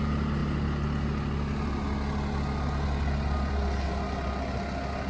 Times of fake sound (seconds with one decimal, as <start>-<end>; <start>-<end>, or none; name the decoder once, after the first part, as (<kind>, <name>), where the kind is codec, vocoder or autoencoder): none